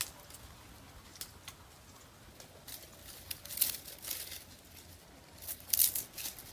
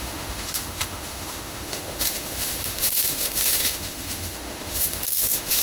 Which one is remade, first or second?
second